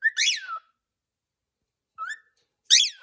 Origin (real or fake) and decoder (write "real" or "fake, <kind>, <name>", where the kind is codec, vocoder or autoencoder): real